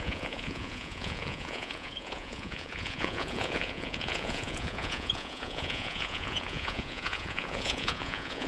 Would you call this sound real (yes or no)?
no